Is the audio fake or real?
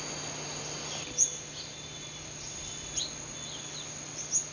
real